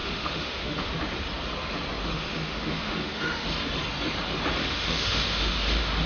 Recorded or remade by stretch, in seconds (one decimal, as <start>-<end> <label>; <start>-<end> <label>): 0.0-0.9 remade; 0.9-2.1 recorded; 2.1-3.5 remade; 3.5-4.6 recorded; 4.6-6.1 remade

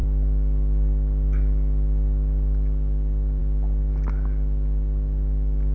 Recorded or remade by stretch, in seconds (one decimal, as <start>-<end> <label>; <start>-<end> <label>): 0.0-5.7 recorded

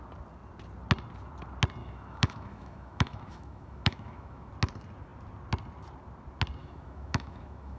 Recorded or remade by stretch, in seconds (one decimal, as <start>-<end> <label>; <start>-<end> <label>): 0.0-1.8 recorded; 1.8-4.5 remade; 4.5-6.6 recorded; 6.6-7.8 remade

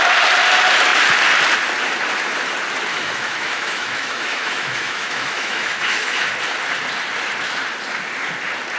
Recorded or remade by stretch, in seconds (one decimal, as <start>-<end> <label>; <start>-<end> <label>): 0.0-2.9 recorded; 2.9-6.3 remade; 6.3-8.8 recorded

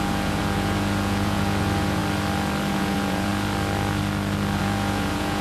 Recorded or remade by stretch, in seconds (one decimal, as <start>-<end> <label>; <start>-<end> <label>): 0.0-2.0 remade; 2.0-2.7 recorded; 2.7-3.3 remade; 3.3-4.6 recorded; 4.6-5.4 remade

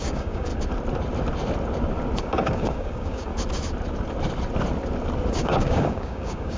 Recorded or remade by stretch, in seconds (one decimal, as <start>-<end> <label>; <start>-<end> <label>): 0.0-0.5 remade; 0.5-2.2 recorded; 2.2-3.3 remade; 3.3-5.3 recorded; 5.3-6.6 remade

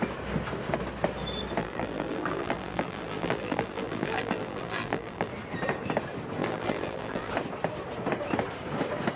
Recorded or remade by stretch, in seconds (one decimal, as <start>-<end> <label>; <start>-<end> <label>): 0.0-1.6 recorded; 1.6-5.3 remade; 5.3-6.4 recorded; 6.4-7.3 remade; 7.3-9.2 recorded

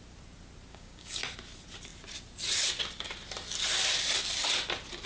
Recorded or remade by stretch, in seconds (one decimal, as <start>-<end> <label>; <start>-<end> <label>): 0.0-0.7 recorded; 0.7-1.2 remade; 1.2-5.1 recorded